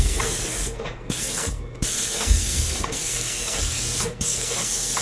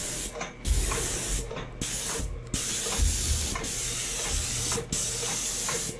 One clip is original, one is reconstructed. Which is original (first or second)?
second